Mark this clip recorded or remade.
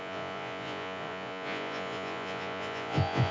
remade